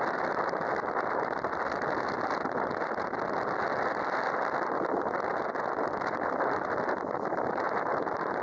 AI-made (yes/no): no